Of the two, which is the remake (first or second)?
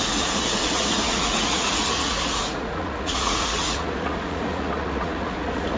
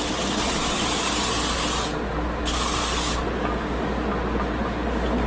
first